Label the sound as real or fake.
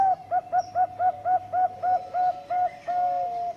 real